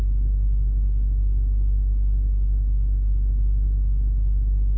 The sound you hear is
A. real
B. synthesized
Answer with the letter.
A